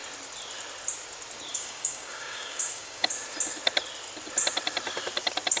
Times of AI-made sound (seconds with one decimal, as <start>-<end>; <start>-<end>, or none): 1.5-3.1